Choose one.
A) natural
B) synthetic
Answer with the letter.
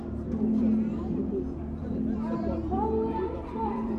B